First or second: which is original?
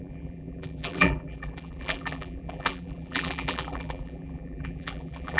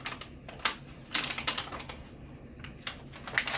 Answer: second